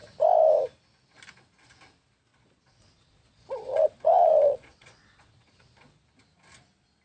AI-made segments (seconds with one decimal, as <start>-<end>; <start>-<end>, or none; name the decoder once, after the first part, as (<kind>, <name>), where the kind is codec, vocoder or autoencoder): 2.3-6.0 (vocoder, Vocos)